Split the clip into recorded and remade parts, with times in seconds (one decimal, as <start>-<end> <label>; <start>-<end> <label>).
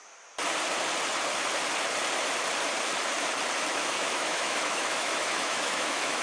0.0-3.7 recorded; 3.7-6.2 remade